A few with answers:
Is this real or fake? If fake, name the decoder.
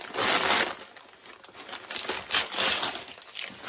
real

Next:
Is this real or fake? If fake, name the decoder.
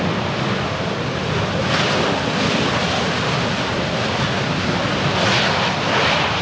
real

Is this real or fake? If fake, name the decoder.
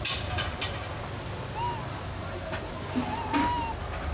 real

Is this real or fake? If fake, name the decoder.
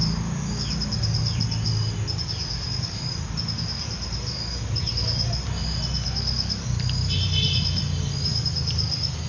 real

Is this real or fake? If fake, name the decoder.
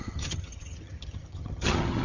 fake, vocoder, HiFi-GAN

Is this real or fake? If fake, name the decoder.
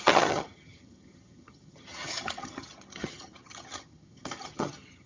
fake, vocoder, HiFi-GAN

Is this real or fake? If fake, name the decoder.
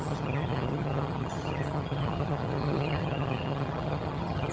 fake, vocoder, HiFi-GAN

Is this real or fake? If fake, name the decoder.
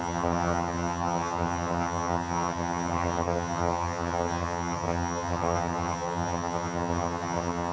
fake, vocoder, HiFi-GAN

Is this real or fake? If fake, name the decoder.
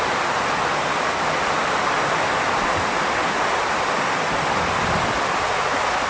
real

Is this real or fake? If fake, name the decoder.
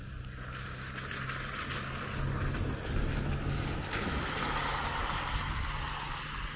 real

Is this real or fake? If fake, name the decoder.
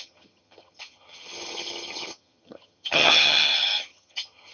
fake, vocoder, HiFi-GAN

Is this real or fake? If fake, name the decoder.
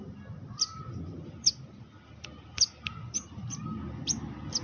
real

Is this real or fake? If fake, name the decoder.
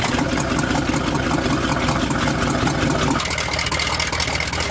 real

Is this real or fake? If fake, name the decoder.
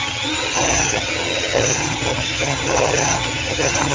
fake, vocoder, HiFi-GAN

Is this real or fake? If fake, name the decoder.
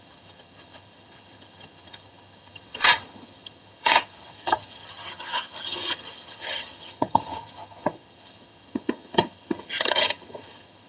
fake, vocoder, HiFi-GAN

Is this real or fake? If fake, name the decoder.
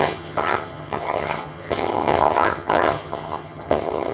fake, vocoder, HiFi-GAN